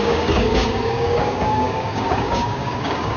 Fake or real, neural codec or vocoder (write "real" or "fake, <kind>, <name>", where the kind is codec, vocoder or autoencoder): fake, codec, DAC